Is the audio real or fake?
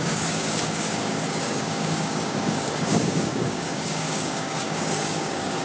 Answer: fake